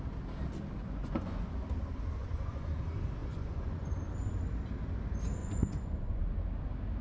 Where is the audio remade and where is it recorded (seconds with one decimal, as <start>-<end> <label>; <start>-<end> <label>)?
0.0-0.8 recorded; 0.8-1.4 remade; 1.4-2.2 recorded; 2.2-2.7 remade; 2.7-3.2 recorded; 3.2-3.9 remade; 3.9-5.4 recorded; 5.4-6.2 remade; 6.2-7.0 recorded